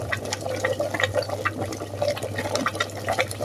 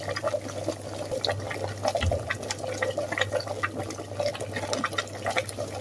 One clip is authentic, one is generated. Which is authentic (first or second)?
second